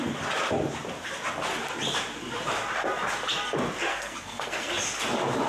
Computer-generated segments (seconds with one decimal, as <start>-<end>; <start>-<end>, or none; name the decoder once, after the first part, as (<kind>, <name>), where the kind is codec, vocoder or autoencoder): 3.9-4.7 (codec, SNAC)